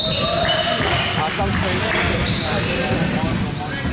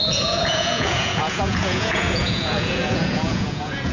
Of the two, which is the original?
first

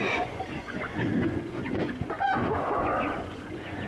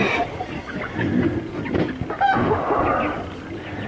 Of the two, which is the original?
second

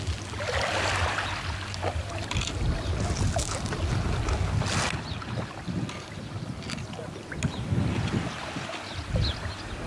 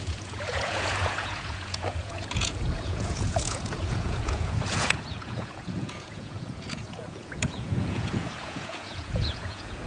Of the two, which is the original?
first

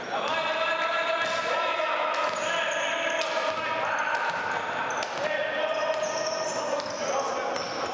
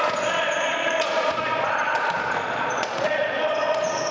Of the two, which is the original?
first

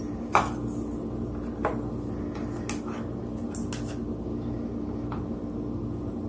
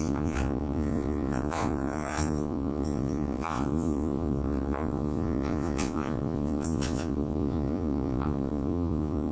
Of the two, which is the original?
first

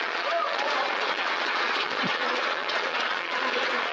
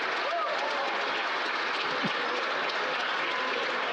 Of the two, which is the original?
second